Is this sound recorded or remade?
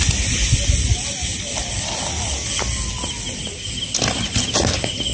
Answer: recorded